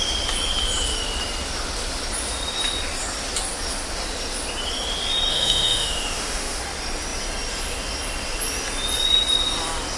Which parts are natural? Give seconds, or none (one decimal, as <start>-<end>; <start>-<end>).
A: 0.0-5.3; 6.6-10.0